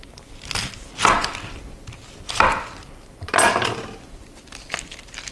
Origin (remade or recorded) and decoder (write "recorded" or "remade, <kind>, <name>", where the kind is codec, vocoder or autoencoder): recorded